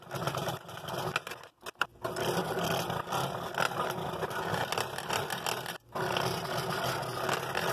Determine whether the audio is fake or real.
real